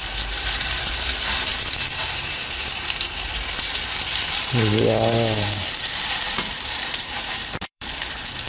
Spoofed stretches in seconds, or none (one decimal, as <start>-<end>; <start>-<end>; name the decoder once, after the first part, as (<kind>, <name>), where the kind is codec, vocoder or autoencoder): 0.0-1.5 (vocoder, BigVGAN v2); 2.1-8.5